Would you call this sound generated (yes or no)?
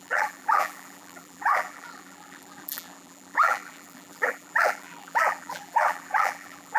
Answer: yes